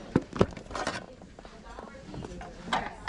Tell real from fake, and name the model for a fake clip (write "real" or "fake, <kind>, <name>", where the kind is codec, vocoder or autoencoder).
real